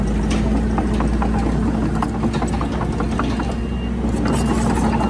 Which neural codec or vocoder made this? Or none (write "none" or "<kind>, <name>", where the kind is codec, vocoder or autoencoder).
none